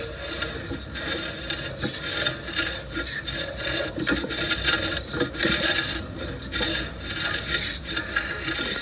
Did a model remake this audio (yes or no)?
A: no